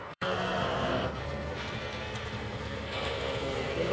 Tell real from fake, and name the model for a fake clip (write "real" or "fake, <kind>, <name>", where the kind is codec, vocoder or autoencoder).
fake, codec, SNAC